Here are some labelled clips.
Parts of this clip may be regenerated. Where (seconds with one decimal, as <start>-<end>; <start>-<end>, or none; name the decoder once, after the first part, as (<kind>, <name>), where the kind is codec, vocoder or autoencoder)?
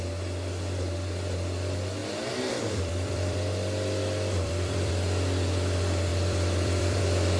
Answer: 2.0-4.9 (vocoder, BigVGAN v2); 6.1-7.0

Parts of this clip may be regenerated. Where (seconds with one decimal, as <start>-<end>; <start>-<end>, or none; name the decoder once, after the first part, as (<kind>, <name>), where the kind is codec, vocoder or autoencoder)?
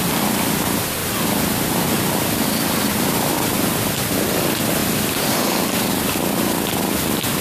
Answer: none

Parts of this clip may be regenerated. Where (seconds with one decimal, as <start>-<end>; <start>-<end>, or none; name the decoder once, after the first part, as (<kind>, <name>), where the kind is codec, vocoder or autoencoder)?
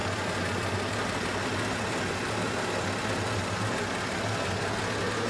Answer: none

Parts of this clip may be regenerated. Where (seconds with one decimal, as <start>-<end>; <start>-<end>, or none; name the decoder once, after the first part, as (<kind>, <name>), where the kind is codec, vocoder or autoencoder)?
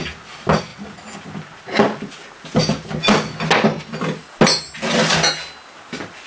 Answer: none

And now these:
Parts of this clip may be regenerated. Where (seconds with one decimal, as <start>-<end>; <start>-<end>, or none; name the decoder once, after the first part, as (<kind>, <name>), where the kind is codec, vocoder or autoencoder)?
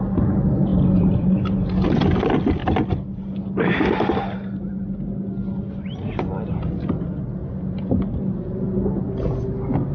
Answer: 0.7-1.7 (vocoder, BigVGAN v2)